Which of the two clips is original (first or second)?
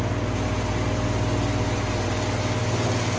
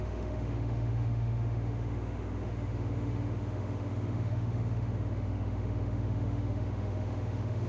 first